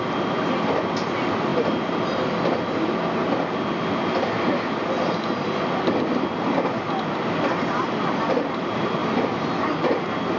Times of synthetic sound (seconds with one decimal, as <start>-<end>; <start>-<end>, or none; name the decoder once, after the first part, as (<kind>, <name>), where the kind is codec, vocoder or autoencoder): none